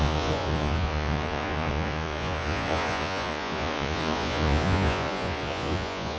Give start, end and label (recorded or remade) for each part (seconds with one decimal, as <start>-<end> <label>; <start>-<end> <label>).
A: 0.0-6.2 remade

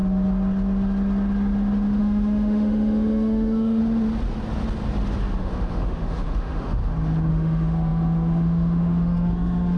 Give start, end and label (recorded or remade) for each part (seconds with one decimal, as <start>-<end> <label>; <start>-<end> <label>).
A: 0.0-2.0 recorded; 2.0-3.8 remade; 3.8-5.4 recorded; 5.4-6.8 remade; 6.8-7.3 recorded; 7.3-9.8 remade

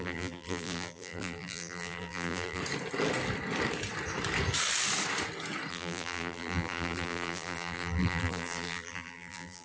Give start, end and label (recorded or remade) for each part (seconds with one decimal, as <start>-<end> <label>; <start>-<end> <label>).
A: 0.0-2.6 remade; 2.6-5.7 recorded; 5.7-9.6 remade

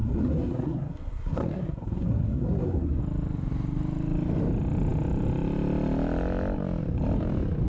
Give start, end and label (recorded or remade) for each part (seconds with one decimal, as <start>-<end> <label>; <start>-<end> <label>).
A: 0.0-3.0 remade; 3.0-7.7 recorded

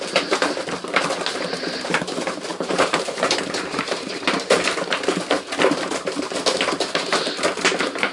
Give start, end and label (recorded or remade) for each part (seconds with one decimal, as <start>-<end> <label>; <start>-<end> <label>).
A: 0.0-1.3 recorded; 1.3-2.0 remade; 2.0-2.5 recorded; 2.5-4.5 remade; 4.5-8.1 recorded

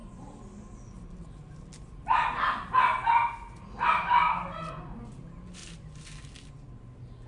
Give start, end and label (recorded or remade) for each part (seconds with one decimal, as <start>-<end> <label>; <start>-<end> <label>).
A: 0.0-7.3 recorded

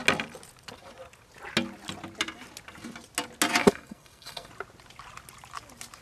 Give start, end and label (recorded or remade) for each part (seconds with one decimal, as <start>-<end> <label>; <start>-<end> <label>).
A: 0.0-3.6 recorded; 3.6-4.5 remade; 4.5-6.0 recorded

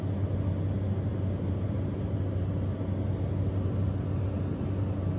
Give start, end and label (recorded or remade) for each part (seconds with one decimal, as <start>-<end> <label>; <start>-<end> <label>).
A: 0.0-5.2 recorded